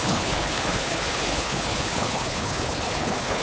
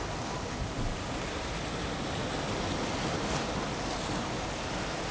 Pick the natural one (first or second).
second